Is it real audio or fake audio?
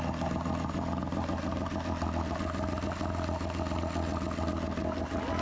real